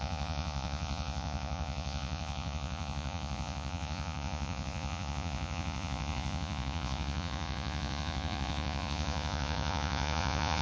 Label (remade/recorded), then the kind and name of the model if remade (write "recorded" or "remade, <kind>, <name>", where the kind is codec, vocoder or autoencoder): remade, vocoder, Vocos